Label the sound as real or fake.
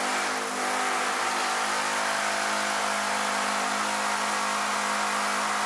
real